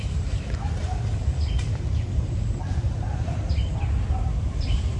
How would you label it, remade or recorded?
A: remade